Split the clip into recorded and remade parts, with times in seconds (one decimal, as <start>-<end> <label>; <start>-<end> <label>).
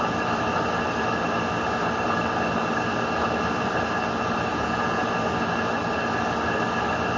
0.0-4.5 recorded; 4.5-5.1 remade; 5.1-7.2 recorded